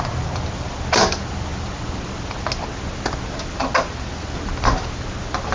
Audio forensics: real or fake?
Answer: real